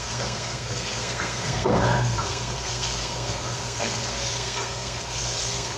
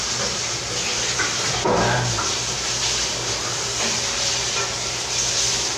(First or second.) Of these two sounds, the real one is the second